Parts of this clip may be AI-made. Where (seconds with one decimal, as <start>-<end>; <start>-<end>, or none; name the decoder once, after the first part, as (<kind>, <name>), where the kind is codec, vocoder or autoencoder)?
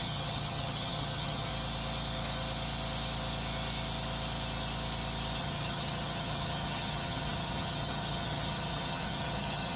0.0-1.5 (vocoder, HiFi-GAN); 5.4-9.8